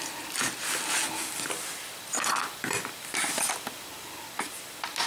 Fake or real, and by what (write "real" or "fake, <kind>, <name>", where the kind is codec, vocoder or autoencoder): real